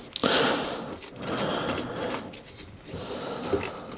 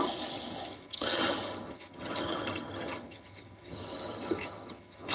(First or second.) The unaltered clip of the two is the first